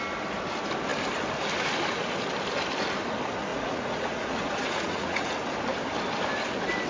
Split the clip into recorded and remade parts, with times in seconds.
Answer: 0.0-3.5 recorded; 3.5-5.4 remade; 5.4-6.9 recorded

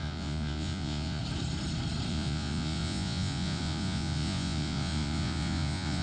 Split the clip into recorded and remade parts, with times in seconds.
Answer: 0.0-1.2 remade; 1.2-2.1 recorded; 2.1-6.0 remade

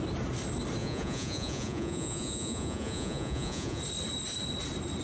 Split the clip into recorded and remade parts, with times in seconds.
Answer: 0.0-0.8 recorded; 0.8-3.8 remade; 3.8-5.0 recorded

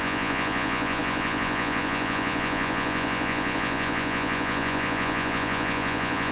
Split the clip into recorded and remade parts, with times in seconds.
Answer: 0.0-6.3 remade